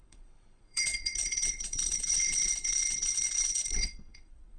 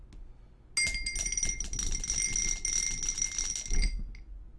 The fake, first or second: first